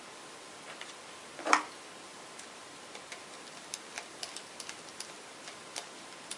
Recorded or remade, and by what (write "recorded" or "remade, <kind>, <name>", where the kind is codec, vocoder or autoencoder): remade, vocoder, BigVGAN v2